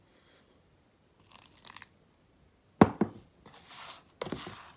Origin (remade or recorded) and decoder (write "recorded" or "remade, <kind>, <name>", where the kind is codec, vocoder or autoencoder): recorded